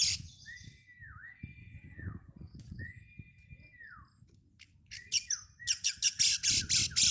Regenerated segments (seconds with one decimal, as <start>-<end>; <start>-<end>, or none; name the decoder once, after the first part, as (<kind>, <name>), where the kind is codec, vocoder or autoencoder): 1.6-2.8 (vocoder, WaveNeXt)